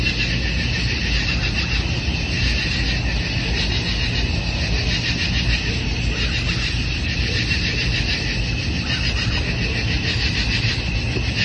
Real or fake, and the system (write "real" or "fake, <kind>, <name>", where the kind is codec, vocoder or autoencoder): real